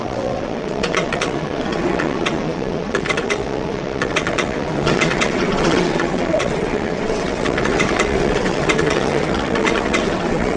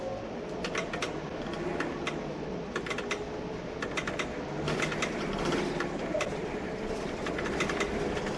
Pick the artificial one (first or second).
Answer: first